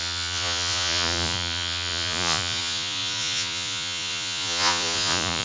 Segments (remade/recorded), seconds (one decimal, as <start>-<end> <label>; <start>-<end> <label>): 0.0-5.4 remade

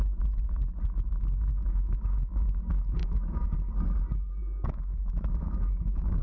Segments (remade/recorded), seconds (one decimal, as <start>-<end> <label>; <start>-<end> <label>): 0.0-1.5 recorded; 1.5-2.6 remade; 2.6-3.0 recorded; 3.0-3.7 remade; 3.7-4.4 recorded; 4.4-6.2 remade